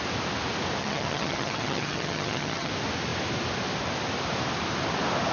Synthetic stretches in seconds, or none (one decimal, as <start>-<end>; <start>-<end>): 0.8-2.7